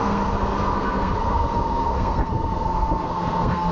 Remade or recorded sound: remade